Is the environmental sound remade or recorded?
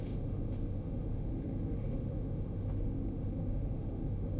remade